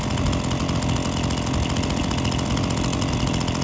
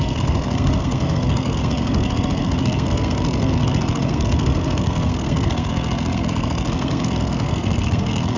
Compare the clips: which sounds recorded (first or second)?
first